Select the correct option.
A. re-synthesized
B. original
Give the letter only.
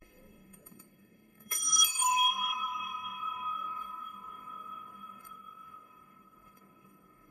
A